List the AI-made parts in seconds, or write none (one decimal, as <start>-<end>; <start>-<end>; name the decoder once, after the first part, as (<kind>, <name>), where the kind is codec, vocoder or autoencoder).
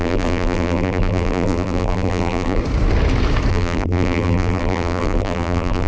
0.0-2.6 (vocoder, BigVGAN v2); 3.5-5.9